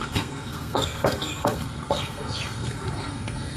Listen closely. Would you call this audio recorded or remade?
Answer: remade